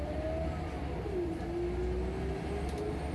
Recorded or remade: recorded